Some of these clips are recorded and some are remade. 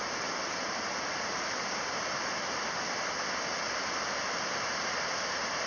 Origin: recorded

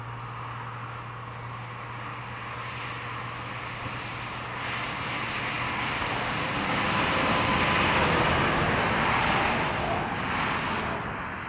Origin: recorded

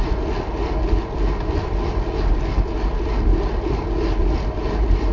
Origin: recorded